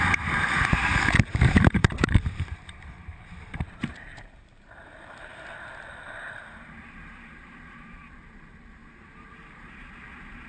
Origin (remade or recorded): remade